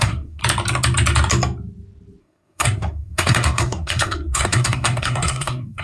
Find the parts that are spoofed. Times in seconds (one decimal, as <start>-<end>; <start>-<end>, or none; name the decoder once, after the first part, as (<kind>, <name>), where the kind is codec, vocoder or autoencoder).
0.0-0.4 (codec, SNAC); 2.2-5.8